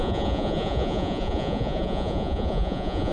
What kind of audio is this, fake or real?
fake